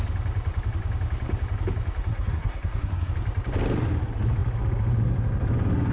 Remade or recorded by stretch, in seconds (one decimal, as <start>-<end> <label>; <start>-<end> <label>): 0.0-2.1 recorded; 2.1-3.1 remade; 3.1-5.9 recorded